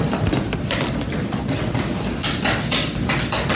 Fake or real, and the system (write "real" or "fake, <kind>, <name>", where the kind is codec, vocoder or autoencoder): real